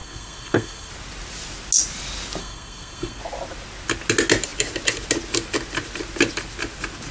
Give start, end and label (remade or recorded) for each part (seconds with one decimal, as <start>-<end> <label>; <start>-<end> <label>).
0.0-0.9 remade; 0.9-2.4 recorded; 2.4-3.2 remade; 3.2-7.1 recorded